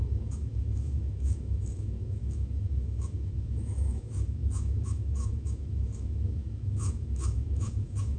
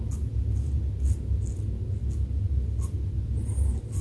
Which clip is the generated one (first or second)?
first